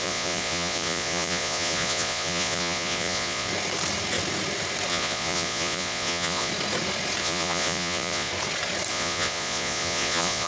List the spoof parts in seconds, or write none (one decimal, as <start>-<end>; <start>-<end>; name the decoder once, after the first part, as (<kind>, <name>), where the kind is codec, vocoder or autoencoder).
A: 0.0-3.5 (vocoder, Vocos); 4.9-6.5; 7.2-8.3; 8.9-10.5